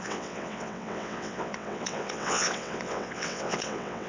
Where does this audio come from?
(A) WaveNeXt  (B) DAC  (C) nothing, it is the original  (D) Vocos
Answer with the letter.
A